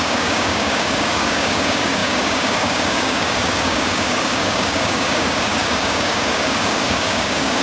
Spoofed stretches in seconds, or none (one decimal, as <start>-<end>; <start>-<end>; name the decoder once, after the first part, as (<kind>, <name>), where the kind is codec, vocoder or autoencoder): 0.0-7.6 (codec, DAC)